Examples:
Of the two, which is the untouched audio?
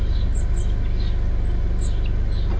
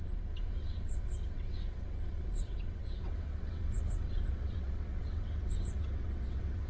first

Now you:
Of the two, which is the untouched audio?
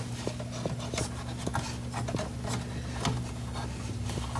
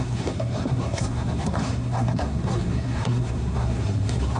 first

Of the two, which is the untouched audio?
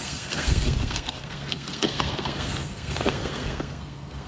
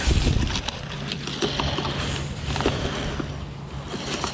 second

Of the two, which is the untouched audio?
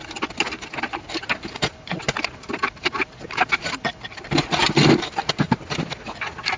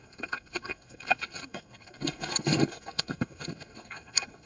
first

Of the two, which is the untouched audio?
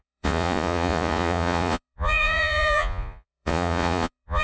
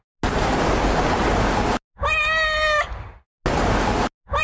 second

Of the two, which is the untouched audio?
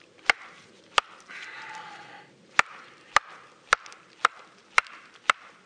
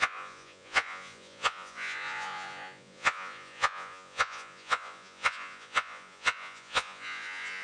first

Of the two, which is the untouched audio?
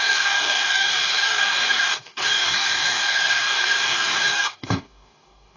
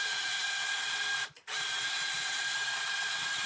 second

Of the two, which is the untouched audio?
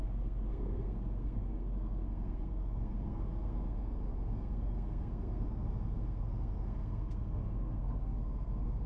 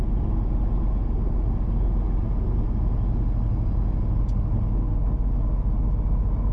second